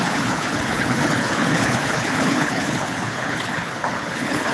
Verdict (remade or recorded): remade